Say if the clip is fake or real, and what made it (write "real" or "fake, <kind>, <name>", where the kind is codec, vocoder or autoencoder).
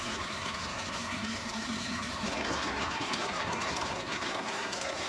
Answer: fake, codec, SNAC